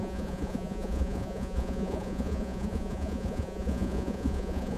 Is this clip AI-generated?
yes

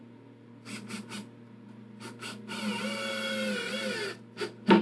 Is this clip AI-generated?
no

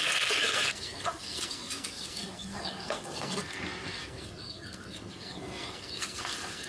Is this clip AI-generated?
yes